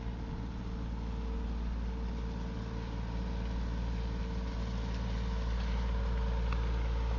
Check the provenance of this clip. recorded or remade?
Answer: recorded